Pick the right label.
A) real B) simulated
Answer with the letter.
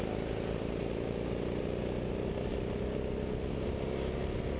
A